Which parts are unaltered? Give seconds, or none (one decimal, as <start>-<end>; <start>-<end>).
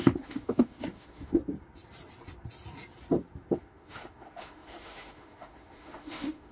1.4-3.5